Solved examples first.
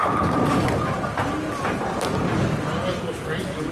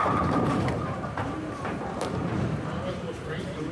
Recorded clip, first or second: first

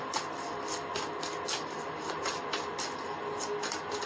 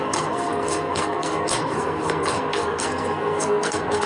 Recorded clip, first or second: first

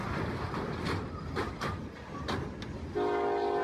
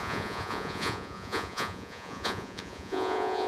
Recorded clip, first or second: first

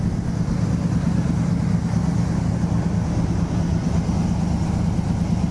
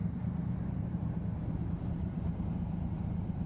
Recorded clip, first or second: first